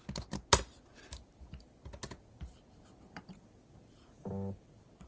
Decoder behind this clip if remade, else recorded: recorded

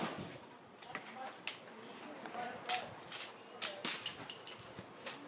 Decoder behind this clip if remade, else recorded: recorded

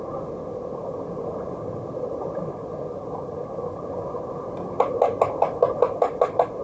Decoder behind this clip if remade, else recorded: recorded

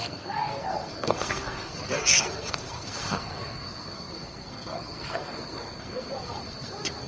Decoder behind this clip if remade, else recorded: remade, codec, SNAC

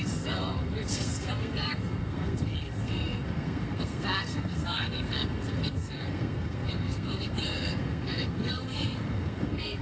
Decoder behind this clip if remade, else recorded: remade, codec, SNAC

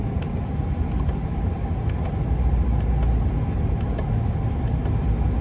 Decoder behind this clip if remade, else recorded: recorded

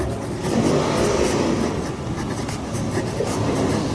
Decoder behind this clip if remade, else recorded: recorded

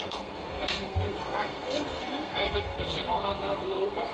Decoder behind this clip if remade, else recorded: remade, codec, SNAC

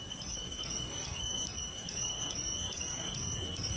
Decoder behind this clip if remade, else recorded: remade, codec, SNAC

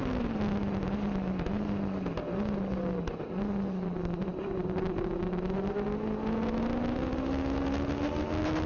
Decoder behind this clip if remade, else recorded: recorded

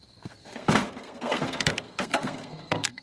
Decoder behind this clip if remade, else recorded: remade, codec, SNAC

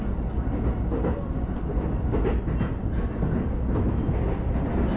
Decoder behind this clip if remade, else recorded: recorded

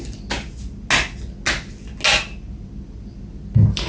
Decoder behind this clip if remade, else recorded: recorded